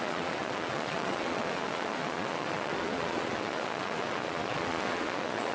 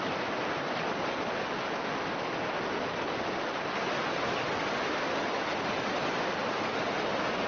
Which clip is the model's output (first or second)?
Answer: first